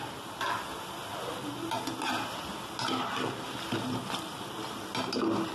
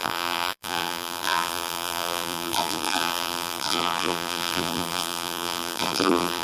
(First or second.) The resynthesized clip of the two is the second